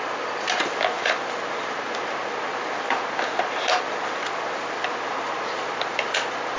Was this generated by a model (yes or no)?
no